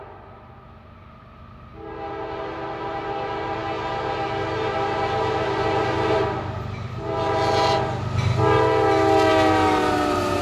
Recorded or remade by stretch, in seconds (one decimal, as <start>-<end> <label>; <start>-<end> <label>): 0.0-10.4 recorded